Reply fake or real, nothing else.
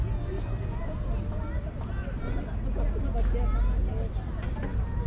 real